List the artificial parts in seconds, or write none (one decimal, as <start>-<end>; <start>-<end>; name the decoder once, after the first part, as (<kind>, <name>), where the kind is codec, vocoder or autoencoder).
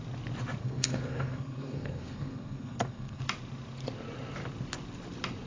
0.6-3.2 (codec, SNAC)